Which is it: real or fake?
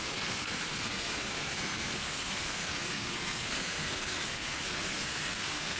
fake